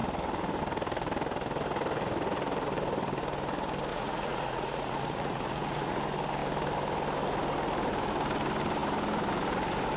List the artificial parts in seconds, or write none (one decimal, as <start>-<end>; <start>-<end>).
3.9-6.0